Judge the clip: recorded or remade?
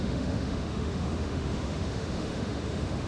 remade